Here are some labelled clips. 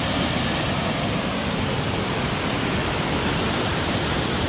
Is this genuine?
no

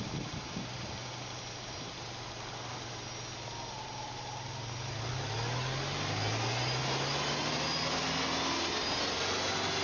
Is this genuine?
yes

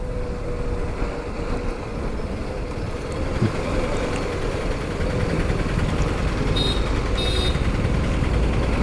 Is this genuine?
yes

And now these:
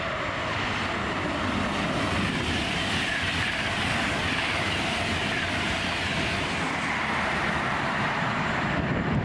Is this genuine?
no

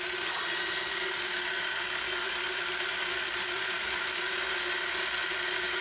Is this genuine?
yes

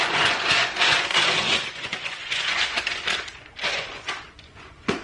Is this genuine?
no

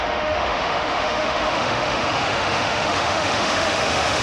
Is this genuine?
no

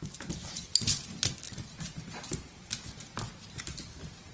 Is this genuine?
yes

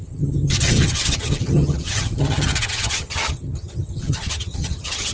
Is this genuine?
no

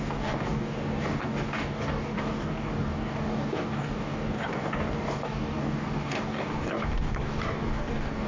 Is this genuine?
no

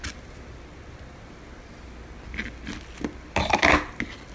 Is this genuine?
yes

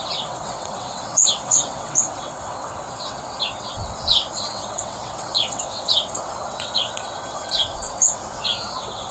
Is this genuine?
no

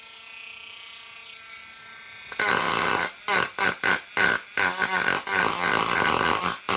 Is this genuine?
yes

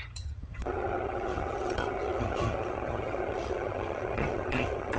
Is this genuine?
no